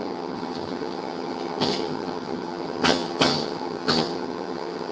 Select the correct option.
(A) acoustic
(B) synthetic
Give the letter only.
B